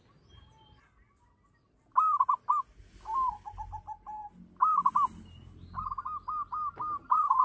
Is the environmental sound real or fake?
real